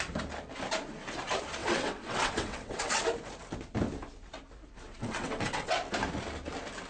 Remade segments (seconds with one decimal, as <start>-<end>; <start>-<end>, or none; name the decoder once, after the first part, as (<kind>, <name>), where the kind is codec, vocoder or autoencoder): 1.6-3.0 (vocoder, WaveNeXt); 5.0-5.7

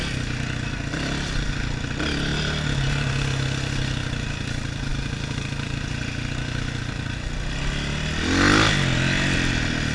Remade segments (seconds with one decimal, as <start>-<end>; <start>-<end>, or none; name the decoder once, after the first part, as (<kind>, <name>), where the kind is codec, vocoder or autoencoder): none

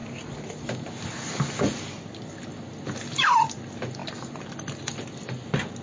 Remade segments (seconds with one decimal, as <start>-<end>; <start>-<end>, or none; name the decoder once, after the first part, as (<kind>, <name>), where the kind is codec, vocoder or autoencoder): none

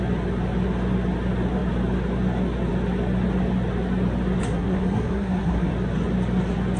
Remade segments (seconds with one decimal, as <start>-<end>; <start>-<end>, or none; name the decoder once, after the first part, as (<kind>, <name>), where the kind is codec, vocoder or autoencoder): 4.4-5.7 (codec, SNAC)

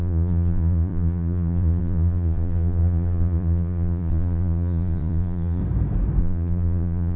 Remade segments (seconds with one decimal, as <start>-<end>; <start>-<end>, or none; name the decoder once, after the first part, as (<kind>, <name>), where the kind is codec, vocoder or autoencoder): 0.0-5.6 (vocoder, Vocos); 6.2-7.2